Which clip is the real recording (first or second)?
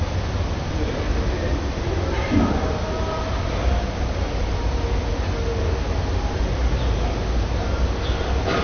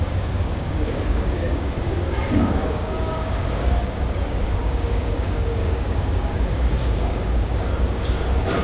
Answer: first